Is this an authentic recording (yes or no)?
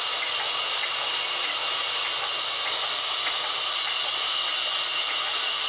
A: yes